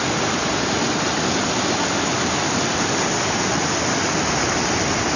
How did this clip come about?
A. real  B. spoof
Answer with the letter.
A